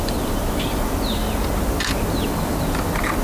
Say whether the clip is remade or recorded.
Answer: recorded